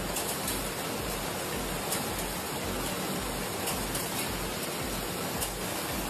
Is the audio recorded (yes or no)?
yes